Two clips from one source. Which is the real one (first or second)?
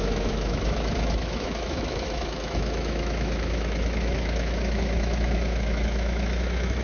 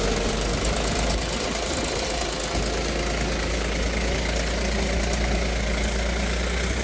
second